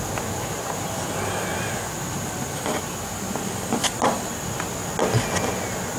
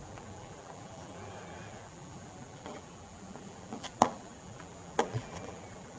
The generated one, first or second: second